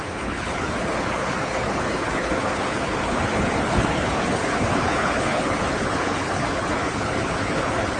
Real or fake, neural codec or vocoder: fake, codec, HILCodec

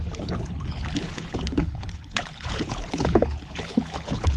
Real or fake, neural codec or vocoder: fake, codec, HILCodec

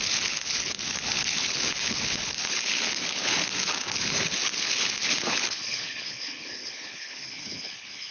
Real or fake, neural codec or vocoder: fake, codec, HILCodec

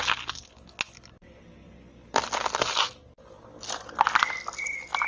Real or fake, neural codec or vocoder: real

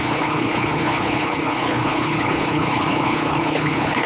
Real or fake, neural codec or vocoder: fake, codec, HILCodec